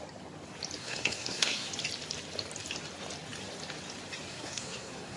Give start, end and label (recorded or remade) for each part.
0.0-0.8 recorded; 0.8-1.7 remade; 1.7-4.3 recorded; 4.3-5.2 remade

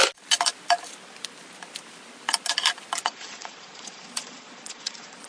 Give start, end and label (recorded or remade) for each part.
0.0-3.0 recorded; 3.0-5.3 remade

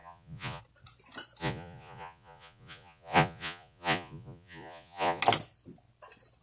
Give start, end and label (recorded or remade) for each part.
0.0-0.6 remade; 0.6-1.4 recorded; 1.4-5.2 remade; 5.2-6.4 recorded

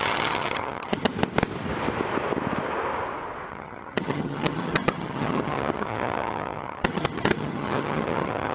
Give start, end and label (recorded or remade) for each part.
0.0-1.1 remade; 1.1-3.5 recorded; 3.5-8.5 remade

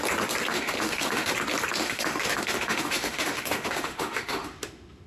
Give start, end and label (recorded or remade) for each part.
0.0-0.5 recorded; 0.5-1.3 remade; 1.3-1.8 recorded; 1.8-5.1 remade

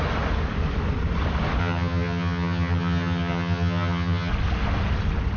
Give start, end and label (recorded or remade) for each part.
0.0-1.6 recorded; 1.6-4.3 remade; 4.3-5.4 recorded

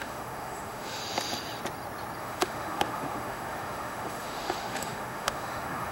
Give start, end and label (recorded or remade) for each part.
0.0-1.0 remade; 1.0-2.2 recorded; 2.2-5.9 remade